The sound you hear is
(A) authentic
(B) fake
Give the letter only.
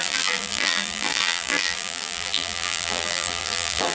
B